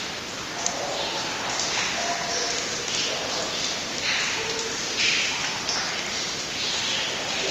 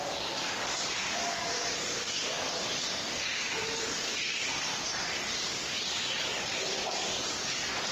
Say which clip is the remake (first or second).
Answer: second